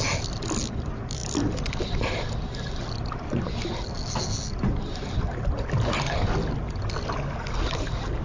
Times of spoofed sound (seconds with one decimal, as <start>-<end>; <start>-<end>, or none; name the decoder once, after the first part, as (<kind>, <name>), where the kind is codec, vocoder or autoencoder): none